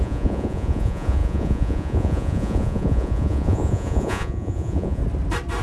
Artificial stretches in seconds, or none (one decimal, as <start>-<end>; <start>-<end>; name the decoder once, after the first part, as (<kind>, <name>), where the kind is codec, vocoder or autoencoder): 0.0-5.0 (vocoder, Vocos)